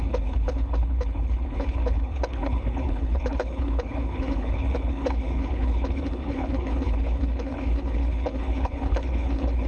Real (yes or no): no